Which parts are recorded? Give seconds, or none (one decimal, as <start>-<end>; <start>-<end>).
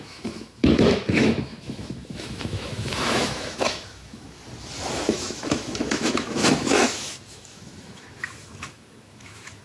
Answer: 4.4-5.1